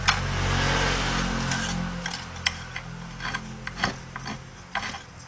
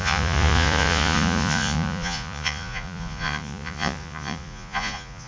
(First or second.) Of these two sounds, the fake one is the second